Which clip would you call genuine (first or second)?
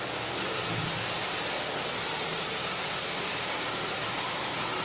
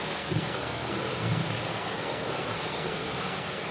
first